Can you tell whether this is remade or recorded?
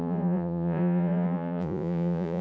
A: remade